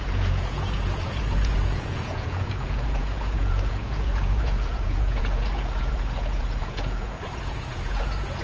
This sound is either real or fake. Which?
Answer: fake